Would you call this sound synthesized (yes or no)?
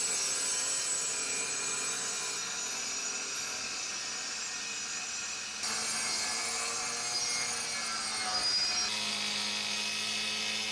no